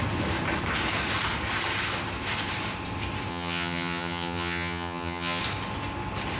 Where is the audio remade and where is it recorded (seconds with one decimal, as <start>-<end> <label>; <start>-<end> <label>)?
0.0-3.3 recorded; 3.3-5.4 remade; 5.4-6.4 recorded